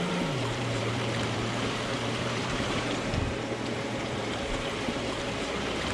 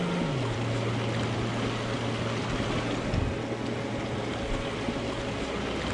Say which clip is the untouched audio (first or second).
second